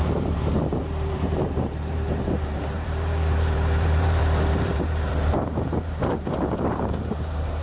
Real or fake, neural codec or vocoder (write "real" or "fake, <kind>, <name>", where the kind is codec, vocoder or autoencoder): fake, vocoder, BigVGAN v2